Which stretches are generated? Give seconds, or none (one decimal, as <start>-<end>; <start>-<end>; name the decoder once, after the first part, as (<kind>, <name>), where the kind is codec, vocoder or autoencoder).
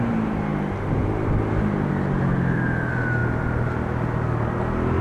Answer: none